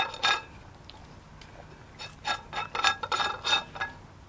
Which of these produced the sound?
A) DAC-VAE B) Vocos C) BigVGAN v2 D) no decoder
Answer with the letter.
D